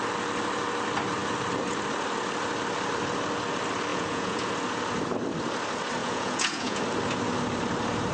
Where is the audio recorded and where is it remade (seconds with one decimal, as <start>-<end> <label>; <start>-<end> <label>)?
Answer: 0.0-3.9 recorded; 3.9-4.5 remade; 4.5-6.0 recorded; 6.0-6.8 remade; 6.8-8.1 recorded